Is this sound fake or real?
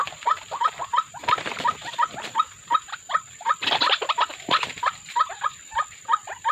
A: real